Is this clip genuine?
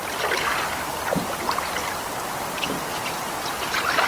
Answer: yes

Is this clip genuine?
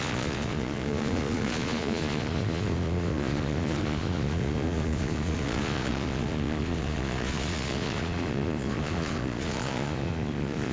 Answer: no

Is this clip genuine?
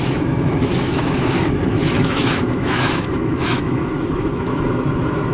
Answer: no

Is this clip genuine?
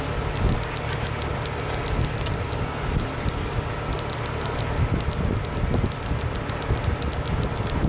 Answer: yes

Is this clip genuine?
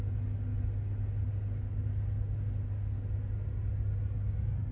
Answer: yes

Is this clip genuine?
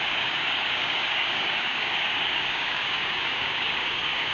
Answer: no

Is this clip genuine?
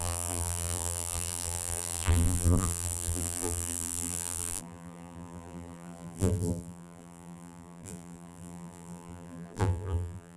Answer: no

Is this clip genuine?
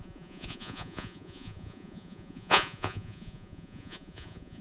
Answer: no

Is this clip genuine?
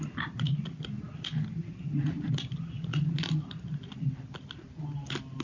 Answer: yes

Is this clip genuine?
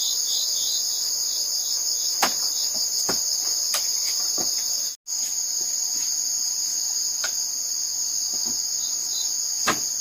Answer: yes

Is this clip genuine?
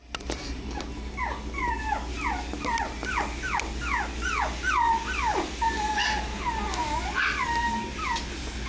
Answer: yes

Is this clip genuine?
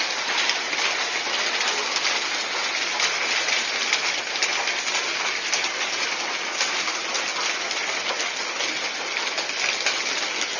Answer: yes